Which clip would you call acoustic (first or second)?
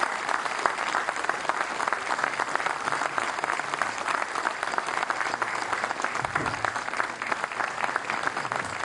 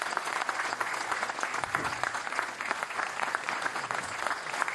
first